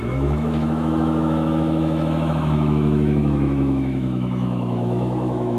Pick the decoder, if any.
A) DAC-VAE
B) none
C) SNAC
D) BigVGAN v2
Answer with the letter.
A